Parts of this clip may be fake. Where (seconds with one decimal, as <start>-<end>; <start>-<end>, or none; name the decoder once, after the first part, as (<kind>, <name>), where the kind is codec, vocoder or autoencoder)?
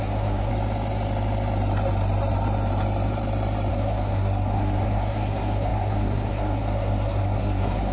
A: 0.0-0.5 (codec, SNAC); 3.7-7.9